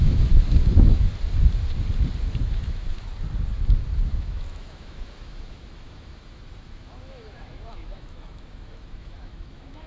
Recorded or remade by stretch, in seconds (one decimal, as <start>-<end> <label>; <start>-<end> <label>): 0.0-1.1 remade; 1.1-2.2 recorded; 2.2-3.1 remade; 3.1-4.0 recorded; 4.0-9.9 remade